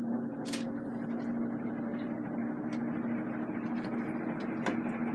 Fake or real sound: real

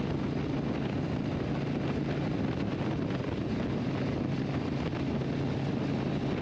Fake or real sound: real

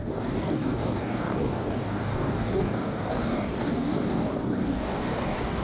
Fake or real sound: fake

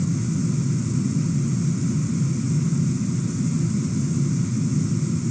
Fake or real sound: real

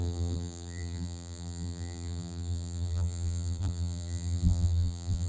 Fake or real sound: fake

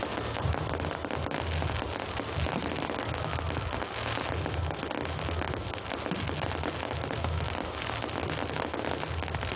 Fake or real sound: real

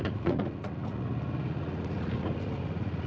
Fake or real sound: fake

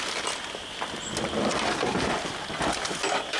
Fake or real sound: real